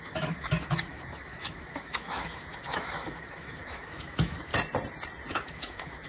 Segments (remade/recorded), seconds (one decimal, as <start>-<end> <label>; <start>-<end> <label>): 0.0-4.5 remade; 4.5-5.3 recorded; 5.3-6.1 remade